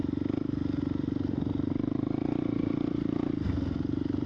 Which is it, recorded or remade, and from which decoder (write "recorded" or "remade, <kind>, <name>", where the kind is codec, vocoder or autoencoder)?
recorded